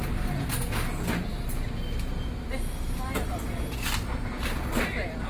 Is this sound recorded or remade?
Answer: recorded